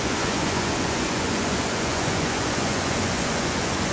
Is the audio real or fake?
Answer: fake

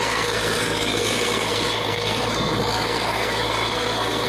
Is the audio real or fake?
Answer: fake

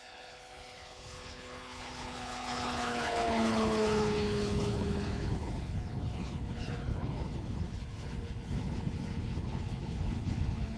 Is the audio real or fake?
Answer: fake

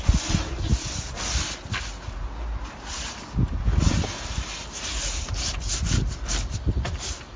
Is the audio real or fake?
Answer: real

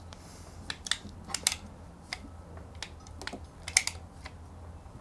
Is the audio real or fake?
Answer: real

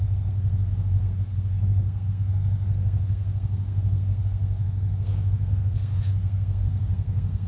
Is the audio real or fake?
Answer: fake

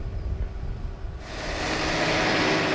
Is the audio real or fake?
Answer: real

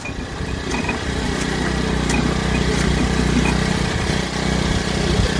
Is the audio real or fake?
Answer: real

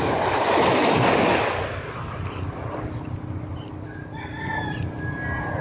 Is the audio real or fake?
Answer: real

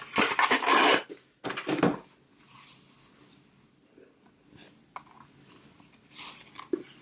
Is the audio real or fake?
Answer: real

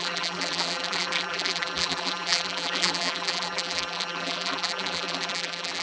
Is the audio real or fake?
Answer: fake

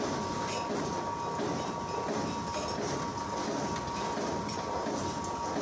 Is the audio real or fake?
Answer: real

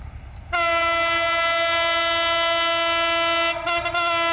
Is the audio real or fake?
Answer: real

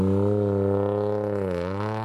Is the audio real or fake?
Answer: real